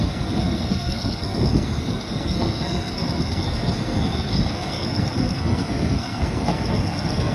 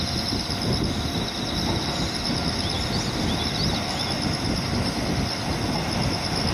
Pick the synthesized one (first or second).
first